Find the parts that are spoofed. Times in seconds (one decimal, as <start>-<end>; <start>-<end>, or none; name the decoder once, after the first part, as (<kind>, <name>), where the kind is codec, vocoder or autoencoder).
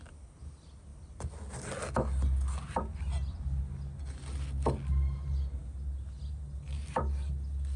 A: none